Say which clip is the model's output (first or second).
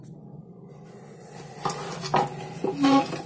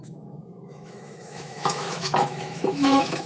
second